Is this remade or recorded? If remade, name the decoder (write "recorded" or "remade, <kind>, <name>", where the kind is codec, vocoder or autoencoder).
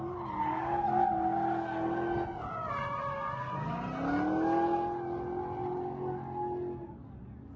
recorded